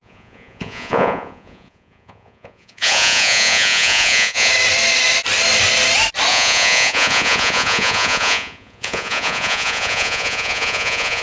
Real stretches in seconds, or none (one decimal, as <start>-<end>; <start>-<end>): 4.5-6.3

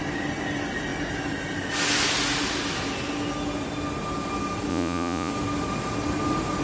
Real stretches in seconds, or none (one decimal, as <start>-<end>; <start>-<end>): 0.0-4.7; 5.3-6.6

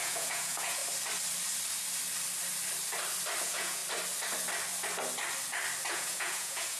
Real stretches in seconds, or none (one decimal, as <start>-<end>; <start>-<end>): 0.8-3.4; 3.8-5.9

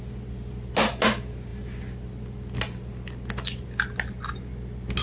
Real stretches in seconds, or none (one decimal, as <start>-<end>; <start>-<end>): 0.0-5.0

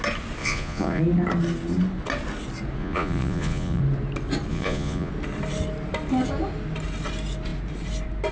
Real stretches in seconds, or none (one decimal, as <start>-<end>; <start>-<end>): 0.0-0.4; 1.0-2.8; 3.8-4.5; 5.1-8.3

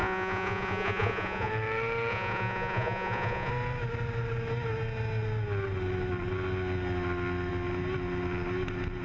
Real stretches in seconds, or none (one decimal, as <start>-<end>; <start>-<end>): 1.5-2.1; 3.5-9.0

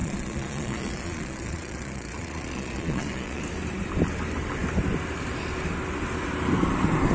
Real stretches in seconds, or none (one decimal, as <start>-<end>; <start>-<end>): 3.4-7.1